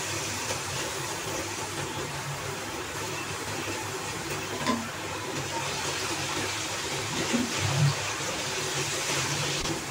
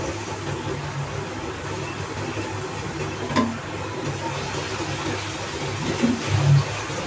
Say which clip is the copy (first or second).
first